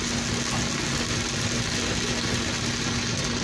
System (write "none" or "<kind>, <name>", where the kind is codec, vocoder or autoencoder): none